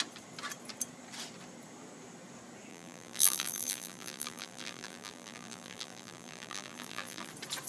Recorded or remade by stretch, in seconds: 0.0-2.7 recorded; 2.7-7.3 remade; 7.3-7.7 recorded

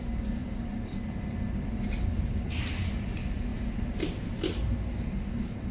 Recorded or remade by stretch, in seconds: 0.0-0.4 recorded; 0.4-1.1 remade; 1.1-3.5 recorded; 3.5-4.3 remade; 4.3-5.7 recorded

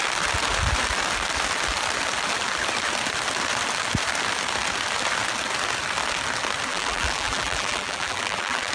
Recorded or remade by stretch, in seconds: 0.0-6.7 recorded; 6.7-8.7 remade

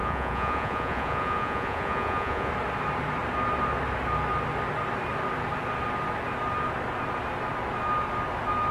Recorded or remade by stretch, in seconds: 0.0-2.5 remade; 2.5-8.7 recorded

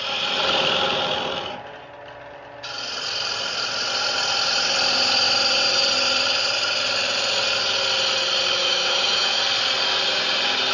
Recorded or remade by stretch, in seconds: 0.0-8.6 recorded; 8.6-9.4 remade; 9.4-10.7 recorded

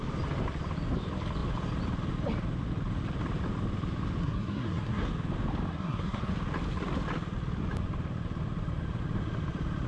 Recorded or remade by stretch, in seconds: 0.0-4.2 recorded; 4.2-5.1 remade; 5.1-5.7 recorded; 5.7-6.3 remade; 6.3-9.9 recorded